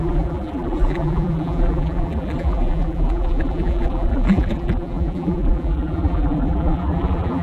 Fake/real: fake